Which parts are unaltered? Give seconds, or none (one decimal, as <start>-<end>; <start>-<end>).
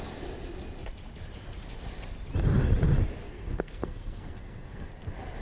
0.0-3.2; 4.9-5.4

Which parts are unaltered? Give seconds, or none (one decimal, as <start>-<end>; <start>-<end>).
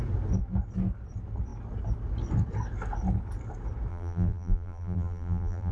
0.0-3.9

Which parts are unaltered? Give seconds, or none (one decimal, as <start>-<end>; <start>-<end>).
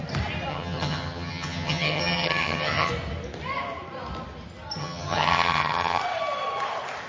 0.0-0.5; 2.9-4.8; 6.0-7.1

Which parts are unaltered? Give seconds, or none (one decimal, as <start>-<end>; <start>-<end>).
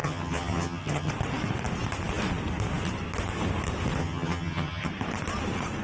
1.1-4.0; 4.9-5.8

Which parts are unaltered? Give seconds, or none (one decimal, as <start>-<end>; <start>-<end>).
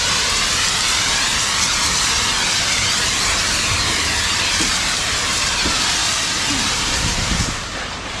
1.3-3.0; 6.0-6.7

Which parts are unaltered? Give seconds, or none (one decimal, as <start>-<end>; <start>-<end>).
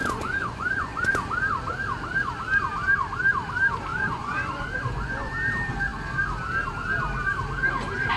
1.2-3.9; 5.3-8.2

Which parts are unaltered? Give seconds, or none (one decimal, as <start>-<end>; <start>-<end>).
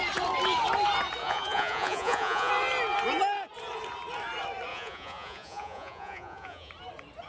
0.0-1.2; 2.5-4.7; 6.7-7.3